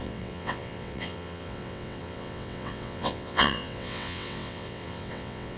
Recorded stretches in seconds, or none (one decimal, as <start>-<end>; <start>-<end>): none